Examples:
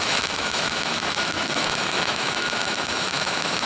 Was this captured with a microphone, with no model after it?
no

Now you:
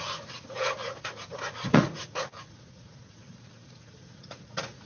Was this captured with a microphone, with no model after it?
no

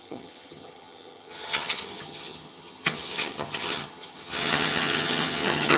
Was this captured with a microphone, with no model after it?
no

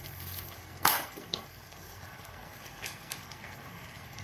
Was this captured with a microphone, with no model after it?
no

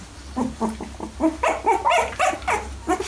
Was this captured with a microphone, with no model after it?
yes